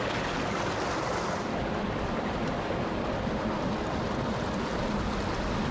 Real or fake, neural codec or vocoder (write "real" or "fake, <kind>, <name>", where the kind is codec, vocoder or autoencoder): real